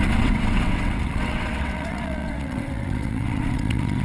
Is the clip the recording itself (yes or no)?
no